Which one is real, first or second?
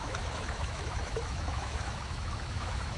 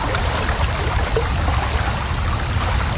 second